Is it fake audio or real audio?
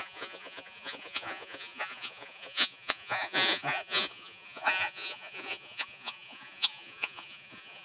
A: fake